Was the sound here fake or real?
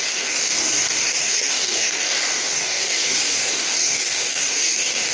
fake